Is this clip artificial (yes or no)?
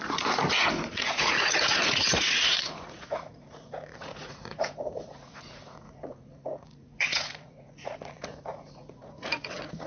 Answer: yes